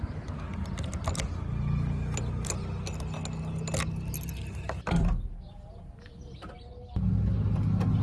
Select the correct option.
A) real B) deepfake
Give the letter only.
A